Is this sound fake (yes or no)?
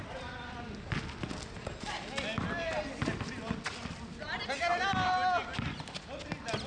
no